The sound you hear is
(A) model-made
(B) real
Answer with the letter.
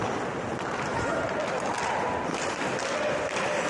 B